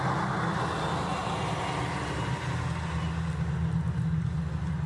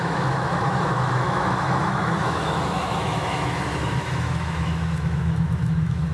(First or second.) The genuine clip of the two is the first